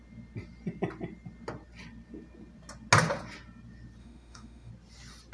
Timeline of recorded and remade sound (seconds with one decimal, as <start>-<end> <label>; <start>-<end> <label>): 0.0-4.0 recorded; 4.0-4.7 remade; 4.7-5.3 recorded